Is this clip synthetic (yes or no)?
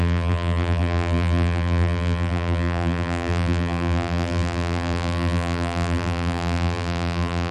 yes